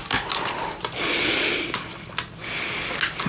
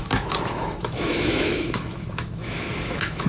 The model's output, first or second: second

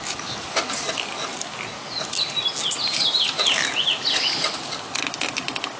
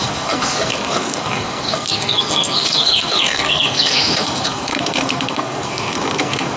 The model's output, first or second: second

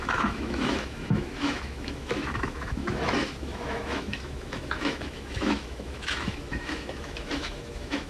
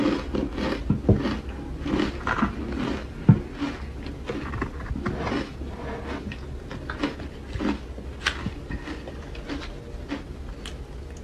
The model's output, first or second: first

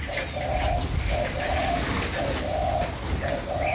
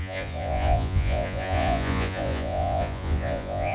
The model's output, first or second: second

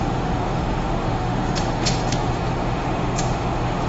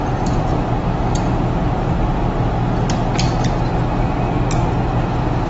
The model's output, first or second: first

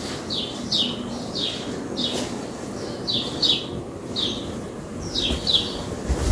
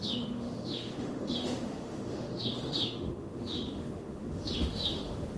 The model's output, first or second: second